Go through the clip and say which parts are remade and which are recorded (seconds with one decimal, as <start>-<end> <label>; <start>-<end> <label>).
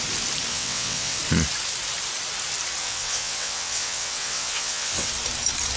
0.0-0.5 recorded; 0.5-1.2 remade; 1.2-2.8 recorded; 2.8-5.1 remade; 5.1-5.8 recorded